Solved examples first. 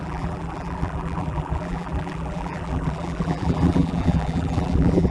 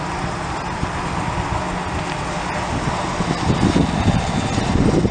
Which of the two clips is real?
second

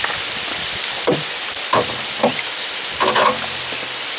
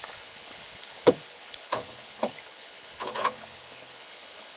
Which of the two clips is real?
first